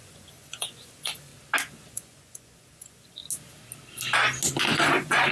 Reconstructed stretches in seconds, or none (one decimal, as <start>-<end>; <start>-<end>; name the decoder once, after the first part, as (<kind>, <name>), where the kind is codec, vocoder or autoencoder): 0.0-1.3 (vocoder, Vocos); 1.9-3.2; 4.6-5.3